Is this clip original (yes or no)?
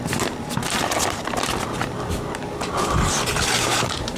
yes